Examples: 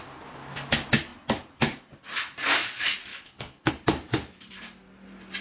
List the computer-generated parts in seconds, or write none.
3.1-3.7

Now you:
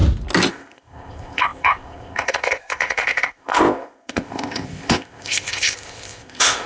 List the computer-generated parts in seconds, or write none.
0.5-6.7

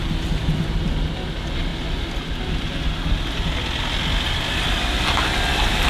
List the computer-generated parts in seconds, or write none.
none

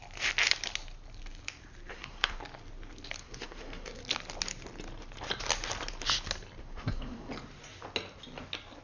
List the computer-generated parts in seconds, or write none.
1.9-2.4; 3.2-4.0; 6.6-7.3

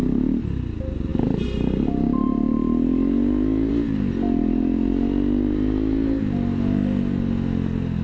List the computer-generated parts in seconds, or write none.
none